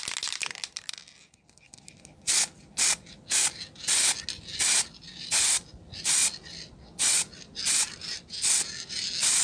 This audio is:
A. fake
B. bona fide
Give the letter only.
B